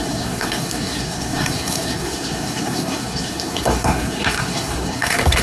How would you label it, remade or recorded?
remade